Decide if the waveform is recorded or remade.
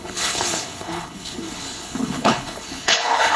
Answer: remade